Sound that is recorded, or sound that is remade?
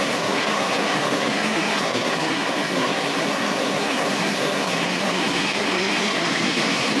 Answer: remade